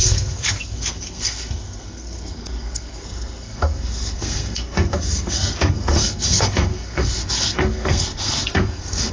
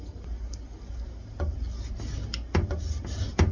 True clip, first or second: second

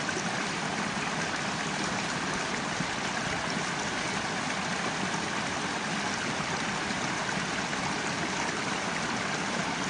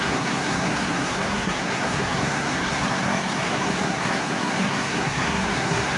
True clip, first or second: first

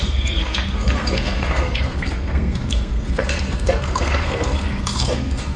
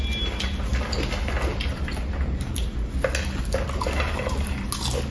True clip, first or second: second